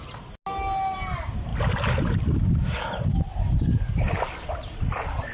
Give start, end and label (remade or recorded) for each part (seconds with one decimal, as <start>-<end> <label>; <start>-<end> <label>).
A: 0.0-5.3 recorded